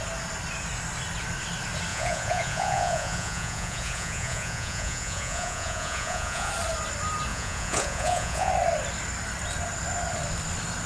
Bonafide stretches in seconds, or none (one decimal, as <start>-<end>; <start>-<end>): 0.0-1.9; 6.5-7.3; 8.5-10.9